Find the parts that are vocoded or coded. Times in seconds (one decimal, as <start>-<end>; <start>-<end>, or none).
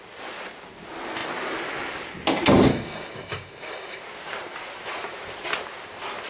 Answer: 2.7-4.0